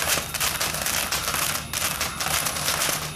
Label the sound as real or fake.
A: real